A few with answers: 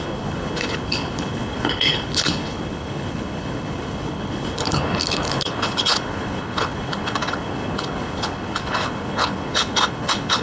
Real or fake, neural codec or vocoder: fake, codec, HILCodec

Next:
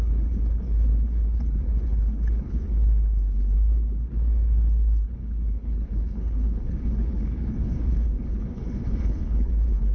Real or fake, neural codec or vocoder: fake, codec, HILCodec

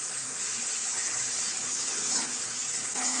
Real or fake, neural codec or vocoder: fake, codec, HILCodec